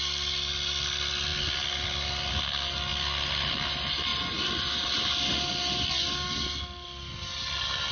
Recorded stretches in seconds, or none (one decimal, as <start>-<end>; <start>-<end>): 0.0-7.9